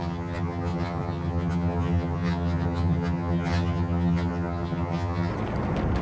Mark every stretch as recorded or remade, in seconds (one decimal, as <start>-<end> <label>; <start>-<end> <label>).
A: 0.0-5.3 remade; 5.3-6.0 recorded